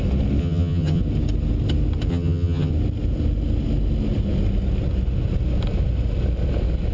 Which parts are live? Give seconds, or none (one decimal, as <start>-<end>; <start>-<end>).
0.0-0.4; 1.0-2.1; 2.7-6.9